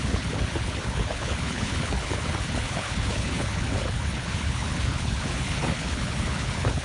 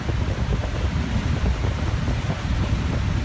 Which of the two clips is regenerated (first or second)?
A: first